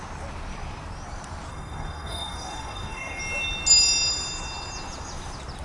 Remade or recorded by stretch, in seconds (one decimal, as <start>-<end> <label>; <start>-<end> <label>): 0.0-1.5 recorded; 1.5-3.2 remade; 3.2-5.6 recorded